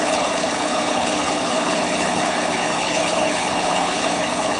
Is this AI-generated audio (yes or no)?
yes